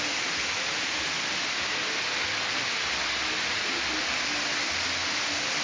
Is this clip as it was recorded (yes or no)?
yes